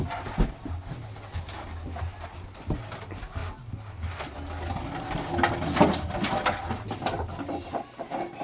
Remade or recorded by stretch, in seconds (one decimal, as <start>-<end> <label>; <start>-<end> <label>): 0.0-8.4 recorded